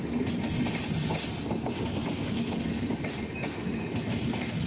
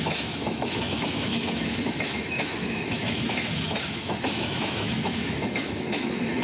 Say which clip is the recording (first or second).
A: first